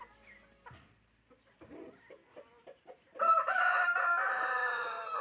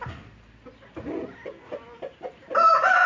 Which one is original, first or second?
second